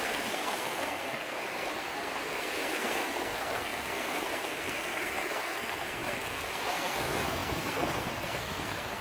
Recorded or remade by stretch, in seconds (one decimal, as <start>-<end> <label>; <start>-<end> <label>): 0.0-9.0 remade